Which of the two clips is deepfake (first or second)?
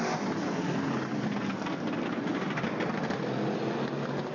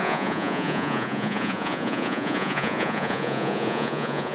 second